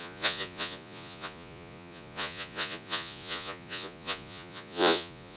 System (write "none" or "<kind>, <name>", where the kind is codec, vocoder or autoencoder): vocoder, Vocos